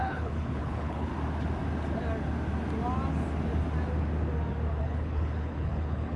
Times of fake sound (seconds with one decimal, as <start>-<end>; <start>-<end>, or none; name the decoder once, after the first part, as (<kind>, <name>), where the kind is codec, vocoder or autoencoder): 0.0-1.1 (codec, HILCodec); 4.8-6.2